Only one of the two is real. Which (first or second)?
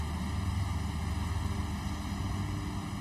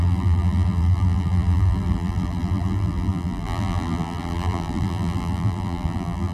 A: first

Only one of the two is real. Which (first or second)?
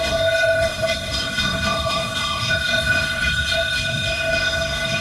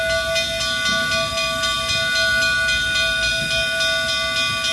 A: second